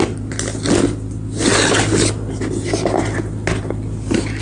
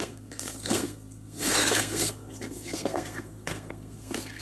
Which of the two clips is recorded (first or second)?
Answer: first